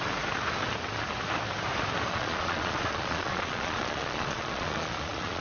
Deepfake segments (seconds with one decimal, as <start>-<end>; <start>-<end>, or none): 2.1-5.4